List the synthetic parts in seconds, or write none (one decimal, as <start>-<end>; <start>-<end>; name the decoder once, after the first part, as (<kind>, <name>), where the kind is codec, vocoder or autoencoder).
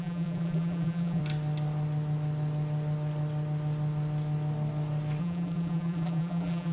0.0-1.2 (vocoder, BigVGAN v2); 5.2-6.7